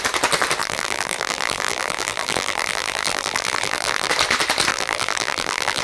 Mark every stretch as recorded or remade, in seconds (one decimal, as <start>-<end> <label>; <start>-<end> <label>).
0.0-0.6 recorded; 0.6-4.1 remade; 4.1-4.7 recorded; 4.7-5.8 remade